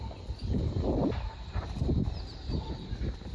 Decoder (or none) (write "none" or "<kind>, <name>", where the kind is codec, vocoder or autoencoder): none